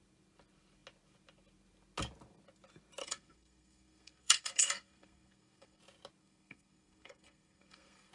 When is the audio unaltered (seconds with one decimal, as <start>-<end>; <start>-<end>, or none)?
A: 0.0-3.0; 5.8-6.2